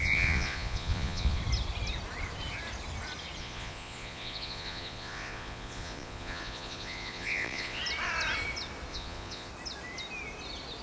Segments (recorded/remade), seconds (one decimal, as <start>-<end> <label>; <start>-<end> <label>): 0.0-1.4 remade; 1.4-3.4 recorded; 3.4-7.8 remade; 7.8-8.9 recorded; 8.9-9.5 remade; 9.5-10.8 recorded